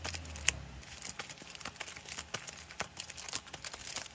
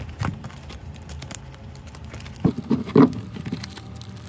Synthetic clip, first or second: second